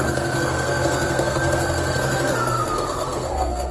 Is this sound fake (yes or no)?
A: yes